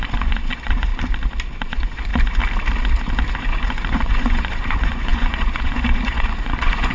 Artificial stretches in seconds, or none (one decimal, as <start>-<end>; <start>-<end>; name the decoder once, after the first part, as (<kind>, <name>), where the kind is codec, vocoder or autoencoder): 0.0-0.9 (vocoder, Vocos); 1.6-2.1; 3.3-6.9